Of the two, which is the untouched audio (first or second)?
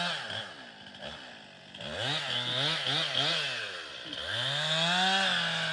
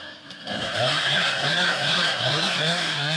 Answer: first